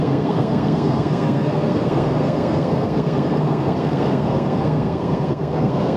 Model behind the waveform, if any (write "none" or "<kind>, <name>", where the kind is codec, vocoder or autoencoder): codec, SNAC